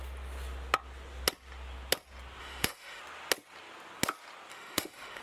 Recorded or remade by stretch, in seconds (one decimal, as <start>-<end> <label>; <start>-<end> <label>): 0.0-2.4 recorded; 2.4-3.0 remade; 3.0-4.5 recorded; 4.5-5.2 remade